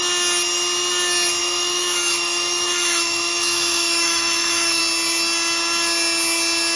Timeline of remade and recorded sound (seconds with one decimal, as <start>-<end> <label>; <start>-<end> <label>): 0.0-1.4 recorded; 1.4-4.8 remade; 4.8-6.8 recorded